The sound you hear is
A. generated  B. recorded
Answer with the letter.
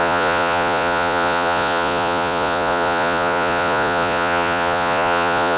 A